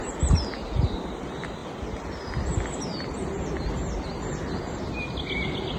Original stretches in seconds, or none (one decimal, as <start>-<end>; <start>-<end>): 0.0-5.8